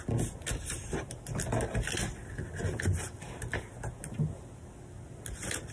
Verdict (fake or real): real